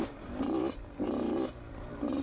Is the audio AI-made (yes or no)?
no